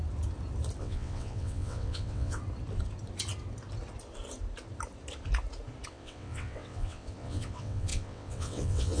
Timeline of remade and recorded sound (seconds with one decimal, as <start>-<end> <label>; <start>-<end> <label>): 0.0-0.8 recorded; 0.8-2.4 remade; 2.4-5.9 recorded; 5.9-9.0 remade